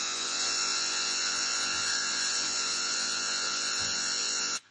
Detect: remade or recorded remade